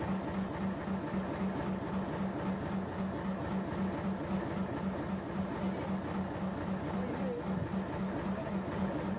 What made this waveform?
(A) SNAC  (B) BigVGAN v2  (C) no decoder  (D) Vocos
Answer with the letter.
C